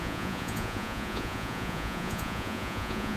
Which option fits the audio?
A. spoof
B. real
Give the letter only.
A